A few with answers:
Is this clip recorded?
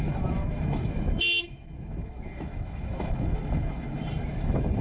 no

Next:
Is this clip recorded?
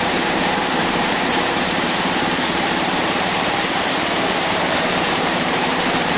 no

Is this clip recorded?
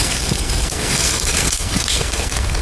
no